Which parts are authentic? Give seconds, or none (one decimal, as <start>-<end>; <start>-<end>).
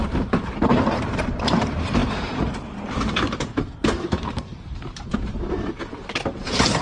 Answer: none